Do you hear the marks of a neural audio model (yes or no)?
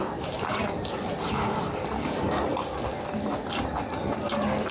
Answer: no